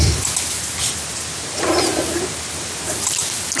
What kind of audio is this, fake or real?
real